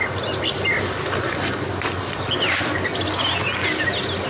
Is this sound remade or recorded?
recorded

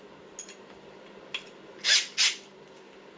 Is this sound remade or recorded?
recorded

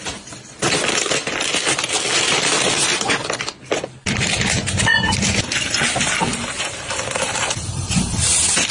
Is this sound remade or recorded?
remade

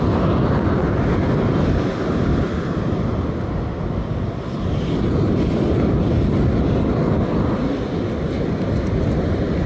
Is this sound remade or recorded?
recorded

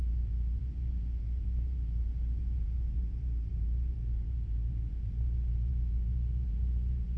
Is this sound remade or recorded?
remade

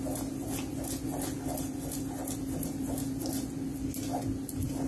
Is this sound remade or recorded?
recorded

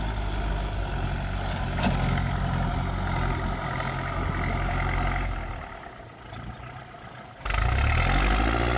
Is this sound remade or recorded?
recorded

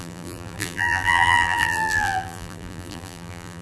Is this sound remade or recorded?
remade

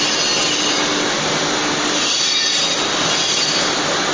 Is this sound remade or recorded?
recorded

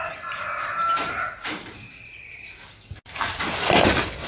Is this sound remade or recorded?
recorded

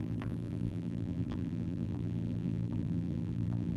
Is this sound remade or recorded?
remade